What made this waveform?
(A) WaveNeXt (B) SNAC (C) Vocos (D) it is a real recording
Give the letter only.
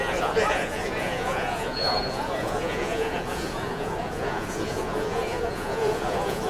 C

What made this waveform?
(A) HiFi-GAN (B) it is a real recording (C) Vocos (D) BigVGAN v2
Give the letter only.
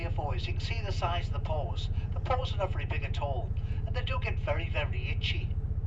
C